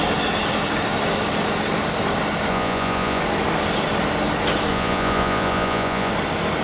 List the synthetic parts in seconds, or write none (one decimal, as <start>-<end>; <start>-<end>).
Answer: 2.5-3.2; 4.7-6.1